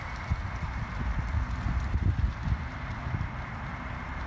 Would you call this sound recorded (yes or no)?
no